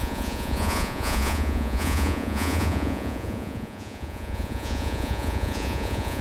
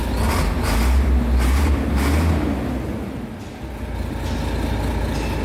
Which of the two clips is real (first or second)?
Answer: second